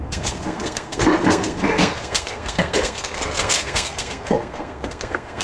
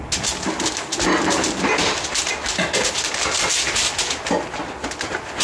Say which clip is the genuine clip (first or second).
second